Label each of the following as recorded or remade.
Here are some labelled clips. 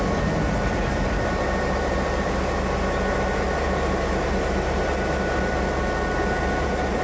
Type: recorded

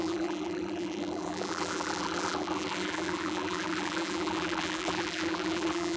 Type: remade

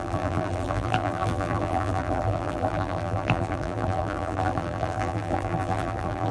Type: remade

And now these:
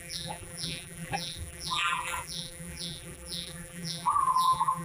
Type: remade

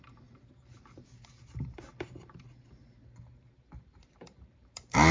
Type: remade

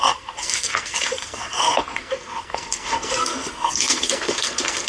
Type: remade